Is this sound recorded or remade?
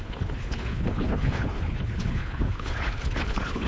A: remade